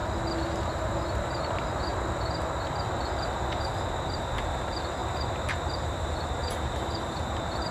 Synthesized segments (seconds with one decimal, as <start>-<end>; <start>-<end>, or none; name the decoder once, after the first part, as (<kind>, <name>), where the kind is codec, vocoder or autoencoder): 0.7-1.9 (vocoder, BigVGAN v2); 3.6-7.7